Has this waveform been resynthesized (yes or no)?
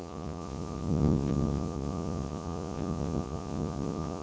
yes